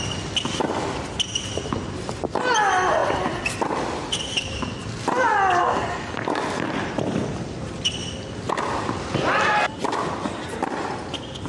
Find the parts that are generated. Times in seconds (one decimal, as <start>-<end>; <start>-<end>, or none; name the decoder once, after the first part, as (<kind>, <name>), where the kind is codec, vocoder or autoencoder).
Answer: none